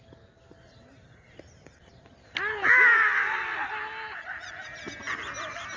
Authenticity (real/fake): real